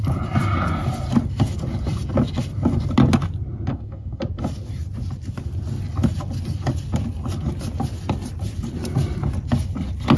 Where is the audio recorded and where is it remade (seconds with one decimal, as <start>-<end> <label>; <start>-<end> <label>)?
0.0-3.7 recorded; 3.7-4.2 remade; 4.2-10.2 recorded

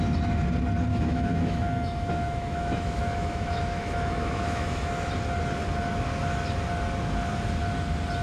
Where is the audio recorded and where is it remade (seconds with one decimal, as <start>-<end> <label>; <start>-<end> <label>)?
0.0-0.9 recorded; 0.9-5.1 remade; 5.1-8.2 recorded

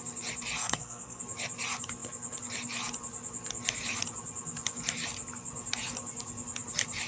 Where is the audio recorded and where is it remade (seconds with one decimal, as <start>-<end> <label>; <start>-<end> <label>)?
0.0-0.6 recorded; 0.6-1.2 remade; 1.2-7.1 recorded